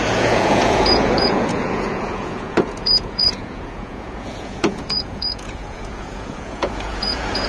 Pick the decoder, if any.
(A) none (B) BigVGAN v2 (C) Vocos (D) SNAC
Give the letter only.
C